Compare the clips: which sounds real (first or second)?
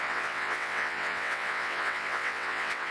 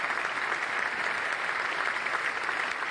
second